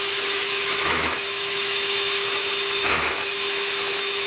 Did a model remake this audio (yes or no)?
yes